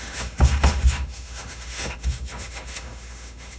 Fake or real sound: fake